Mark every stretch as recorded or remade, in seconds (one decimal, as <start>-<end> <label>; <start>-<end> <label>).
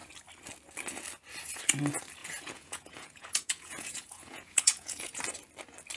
0.0-2.2 recorded; 2.2-5.2 remade; 5.2-6.0 recorded